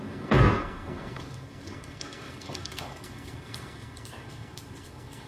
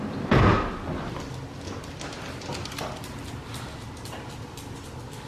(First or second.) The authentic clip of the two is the second